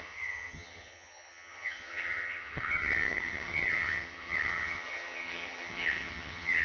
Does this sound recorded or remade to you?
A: remade